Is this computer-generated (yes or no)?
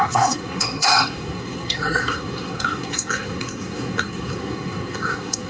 yes